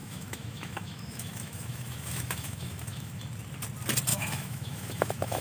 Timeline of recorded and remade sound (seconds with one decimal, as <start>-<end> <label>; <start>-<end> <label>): 0.0-3.2 remade; 3.2-4.1 recorded; 4.1-5.4 remade